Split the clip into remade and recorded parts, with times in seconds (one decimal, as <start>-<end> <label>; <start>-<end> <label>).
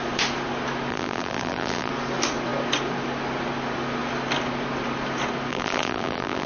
0.0-0.9 recorded; 0.9-1.9 remade; 1.9-5.5 recorded; 5.5-6.5 remade